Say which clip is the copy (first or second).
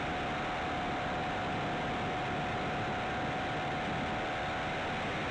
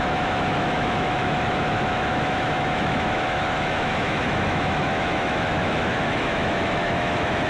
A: second